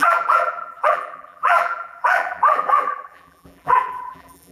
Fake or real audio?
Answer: fake